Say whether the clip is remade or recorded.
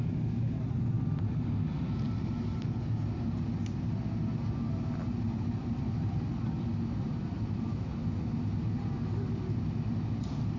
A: recorded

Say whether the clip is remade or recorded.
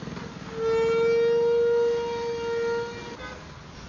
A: recorded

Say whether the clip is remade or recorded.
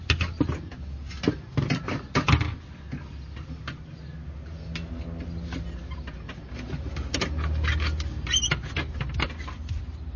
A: recorded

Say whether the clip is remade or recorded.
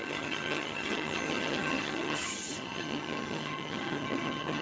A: remade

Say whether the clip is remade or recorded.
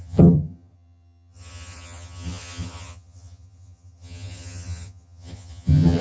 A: remade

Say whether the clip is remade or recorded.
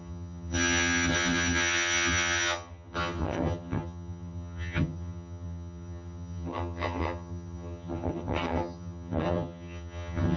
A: remade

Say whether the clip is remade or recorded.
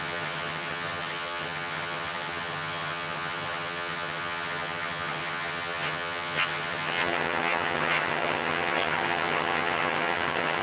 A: remade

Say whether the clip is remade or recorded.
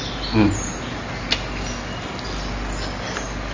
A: recorded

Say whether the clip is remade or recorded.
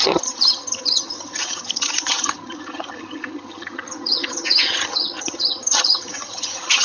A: remade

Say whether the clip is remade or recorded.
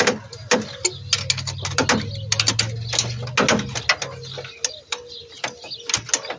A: recorded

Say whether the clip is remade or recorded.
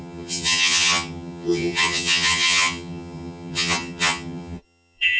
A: remade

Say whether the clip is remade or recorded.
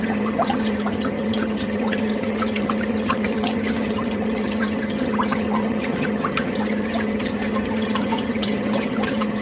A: remade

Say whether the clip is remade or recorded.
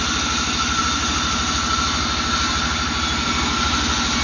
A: recorded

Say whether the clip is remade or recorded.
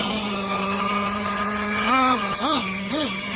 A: remade